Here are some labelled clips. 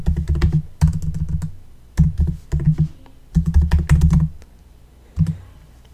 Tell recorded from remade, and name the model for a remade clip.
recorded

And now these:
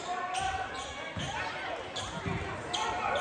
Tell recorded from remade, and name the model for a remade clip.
recorded